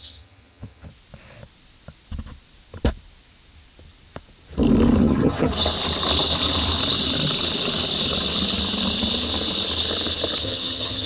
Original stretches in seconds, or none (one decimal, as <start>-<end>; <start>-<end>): 0.9-5.0; 5.5-10.4